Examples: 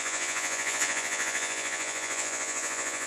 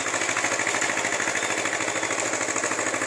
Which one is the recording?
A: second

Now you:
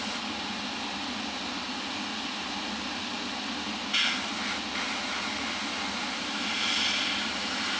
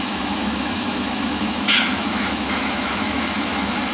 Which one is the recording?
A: first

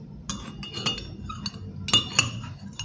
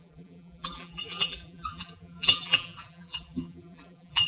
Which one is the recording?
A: first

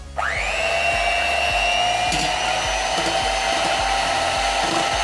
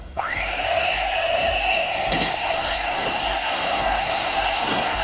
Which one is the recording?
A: first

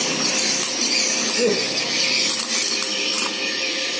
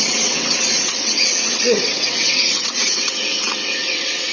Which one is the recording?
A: first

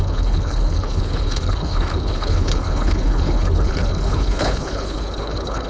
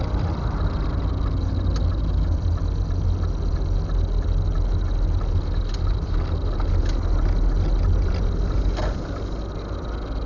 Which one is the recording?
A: second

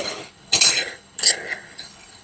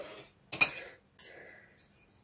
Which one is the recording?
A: second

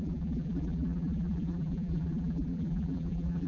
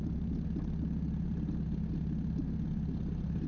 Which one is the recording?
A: second